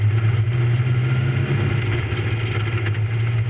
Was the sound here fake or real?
real